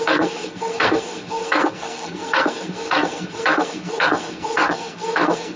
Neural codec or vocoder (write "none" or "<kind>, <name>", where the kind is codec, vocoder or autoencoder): codec, SNAC